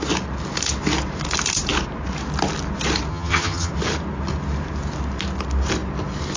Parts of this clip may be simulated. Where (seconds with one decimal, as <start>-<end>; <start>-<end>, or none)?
3.1-3.7